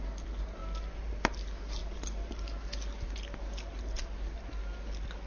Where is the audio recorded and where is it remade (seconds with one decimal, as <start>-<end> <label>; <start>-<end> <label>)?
0.0-5.3 recorded